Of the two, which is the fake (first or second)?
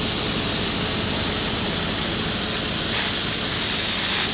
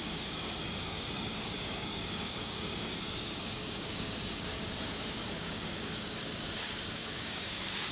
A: second